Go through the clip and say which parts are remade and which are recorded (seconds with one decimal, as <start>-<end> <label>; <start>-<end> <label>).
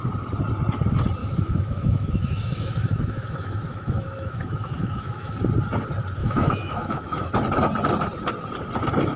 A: 0.0-1.2 recorded; 1.2-5.4 remade; 5.4-6.2 recorded; 6.2-7.3 remade; 7.3-9.2 recorded